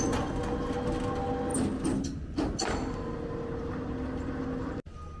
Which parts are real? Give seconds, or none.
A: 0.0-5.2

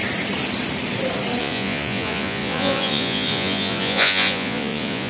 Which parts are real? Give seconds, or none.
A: 0.0-1.4